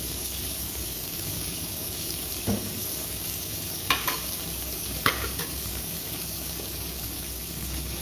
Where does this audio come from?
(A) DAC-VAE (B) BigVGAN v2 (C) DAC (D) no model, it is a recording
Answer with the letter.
C